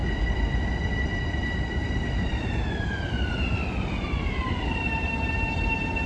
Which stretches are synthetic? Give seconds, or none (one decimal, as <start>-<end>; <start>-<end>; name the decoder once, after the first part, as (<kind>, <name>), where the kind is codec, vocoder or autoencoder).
2.3-6.1 (vocoder, BigVGAN v2)